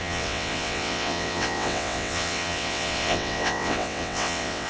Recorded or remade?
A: remade